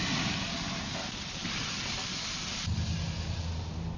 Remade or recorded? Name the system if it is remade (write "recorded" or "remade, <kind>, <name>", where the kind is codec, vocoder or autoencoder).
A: recorded